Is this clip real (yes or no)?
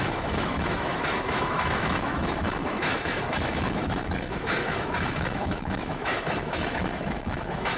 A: no